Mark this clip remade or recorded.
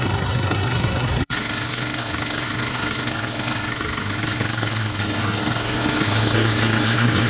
remade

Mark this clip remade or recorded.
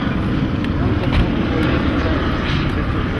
recorded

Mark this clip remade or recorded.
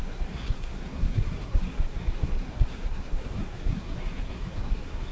remade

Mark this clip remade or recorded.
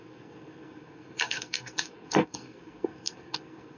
remade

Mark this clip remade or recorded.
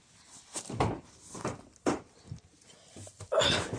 recorded